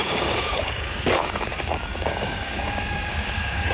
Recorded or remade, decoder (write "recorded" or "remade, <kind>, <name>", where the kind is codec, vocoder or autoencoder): remade, codec, DAC